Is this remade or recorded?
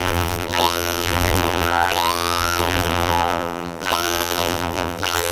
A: remade